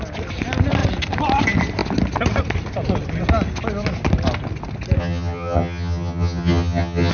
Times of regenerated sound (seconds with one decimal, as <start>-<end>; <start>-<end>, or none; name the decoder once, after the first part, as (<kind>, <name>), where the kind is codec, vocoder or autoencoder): 5.0-7.1 (vocoder, HiFi-GAN)